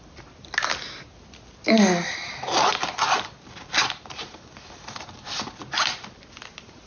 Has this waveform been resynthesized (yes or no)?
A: no